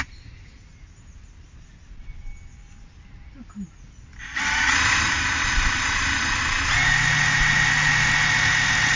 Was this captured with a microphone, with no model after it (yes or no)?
yes